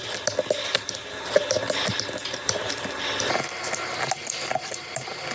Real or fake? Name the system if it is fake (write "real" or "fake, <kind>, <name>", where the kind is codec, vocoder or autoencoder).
real